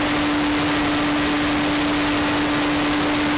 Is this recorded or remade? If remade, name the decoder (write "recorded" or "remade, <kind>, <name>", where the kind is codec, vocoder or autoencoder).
recorded